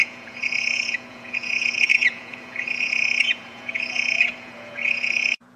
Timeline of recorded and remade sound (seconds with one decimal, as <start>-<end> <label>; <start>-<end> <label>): 0.0-5.6 remade

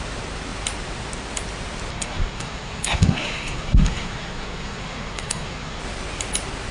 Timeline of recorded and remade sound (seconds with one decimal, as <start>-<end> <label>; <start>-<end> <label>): 0.0-1.9 recorded; 1.9-5.8 remade; 5.8-6.7 recorded